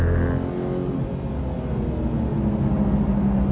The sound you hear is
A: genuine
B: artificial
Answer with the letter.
A